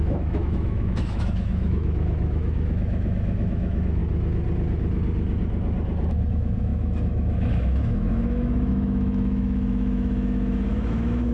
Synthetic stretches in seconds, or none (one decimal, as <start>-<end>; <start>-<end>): 0.0-4.0; 6.3-11.3